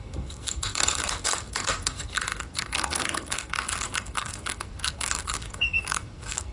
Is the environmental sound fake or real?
fake